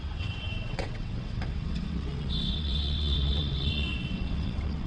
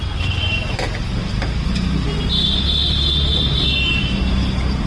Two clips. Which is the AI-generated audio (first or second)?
first